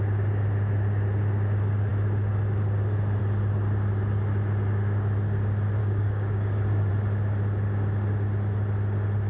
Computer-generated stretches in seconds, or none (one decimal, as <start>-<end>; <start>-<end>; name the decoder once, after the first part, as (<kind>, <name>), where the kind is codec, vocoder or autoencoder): 5.8-6.9 (codec, DAC)